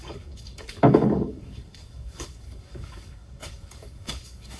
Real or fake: fake